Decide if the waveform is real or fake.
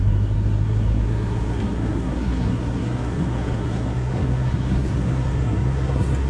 fake